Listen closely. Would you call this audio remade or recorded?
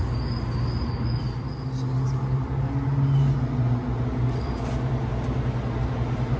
recorded